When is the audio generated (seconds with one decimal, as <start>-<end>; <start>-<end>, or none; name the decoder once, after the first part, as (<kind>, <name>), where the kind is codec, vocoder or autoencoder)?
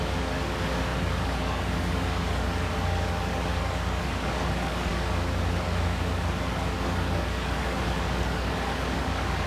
0.0-9.5 (codec, DAC)